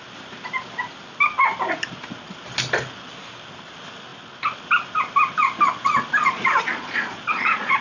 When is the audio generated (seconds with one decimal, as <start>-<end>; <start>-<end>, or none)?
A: 6.2-7.8

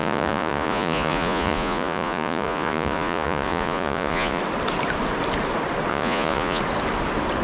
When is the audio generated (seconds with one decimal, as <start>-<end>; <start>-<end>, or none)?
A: 0.0-4.4; 5.9-6.6

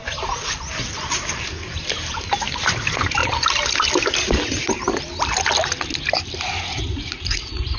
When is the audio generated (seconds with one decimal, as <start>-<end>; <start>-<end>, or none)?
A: 6.7-7.8

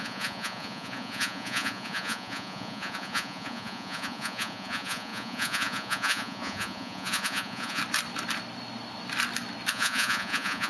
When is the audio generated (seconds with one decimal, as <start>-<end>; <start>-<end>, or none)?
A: 0.0-7.8; 9.7-10.7